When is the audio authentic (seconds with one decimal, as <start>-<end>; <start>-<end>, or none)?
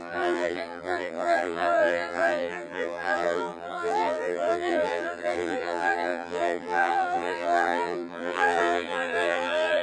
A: none